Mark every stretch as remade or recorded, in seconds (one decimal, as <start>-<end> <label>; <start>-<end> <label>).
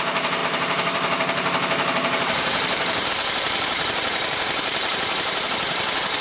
0.0-6.2 remade